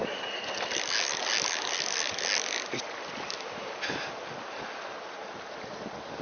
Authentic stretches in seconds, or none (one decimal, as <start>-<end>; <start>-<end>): 0.0-6.2